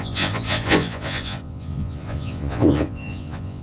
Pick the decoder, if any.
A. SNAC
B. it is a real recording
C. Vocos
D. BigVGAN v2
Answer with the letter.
C